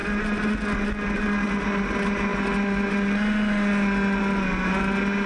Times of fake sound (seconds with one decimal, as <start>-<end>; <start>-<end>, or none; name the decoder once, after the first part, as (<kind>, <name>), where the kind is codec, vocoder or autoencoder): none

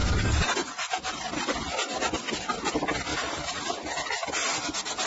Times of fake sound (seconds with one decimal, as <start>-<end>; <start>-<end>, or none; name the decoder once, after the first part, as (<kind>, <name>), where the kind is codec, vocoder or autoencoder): 0.0-1.9 (vocoder, BigVGAN v2); 3.1-5.1

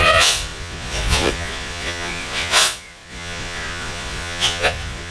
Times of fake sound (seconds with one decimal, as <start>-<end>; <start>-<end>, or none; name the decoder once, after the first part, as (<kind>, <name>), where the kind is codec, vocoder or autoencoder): 0.0-5.1 (vocoder, Vocos)

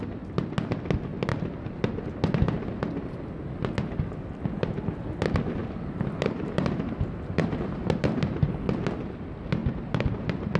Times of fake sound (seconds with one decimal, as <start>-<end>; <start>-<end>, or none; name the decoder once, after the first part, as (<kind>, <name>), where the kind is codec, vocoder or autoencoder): 1.3-2.2 (vocoder, BigVGAN v2); 5.6-8.5; 9.6-10.6

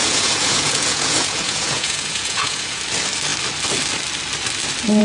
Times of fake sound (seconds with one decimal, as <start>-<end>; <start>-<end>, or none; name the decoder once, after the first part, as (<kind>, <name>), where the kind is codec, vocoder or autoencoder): 0.0-2.8 (vocoder, Vocos)